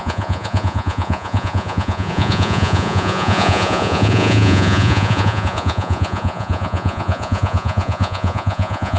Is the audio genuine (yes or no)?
no